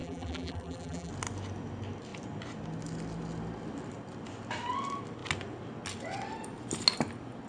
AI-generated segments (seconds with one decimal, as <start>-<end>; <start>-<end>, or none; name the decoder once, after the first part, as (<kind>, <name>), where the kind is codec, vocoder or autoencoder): 0.0-1.1 (vocoder, BigVGAN v2)